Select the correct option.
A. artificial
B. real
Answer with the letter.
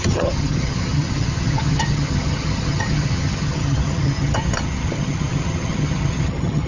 A